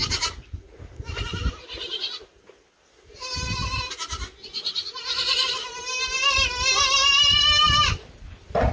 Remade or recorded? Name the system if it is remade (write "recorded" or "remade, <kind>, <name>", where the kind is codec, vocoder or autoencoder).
recorded